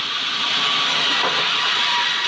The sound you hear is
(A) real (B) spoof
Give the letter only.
B